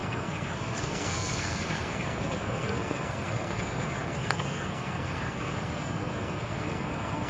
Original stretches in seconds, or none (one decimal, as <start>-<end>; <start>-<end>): none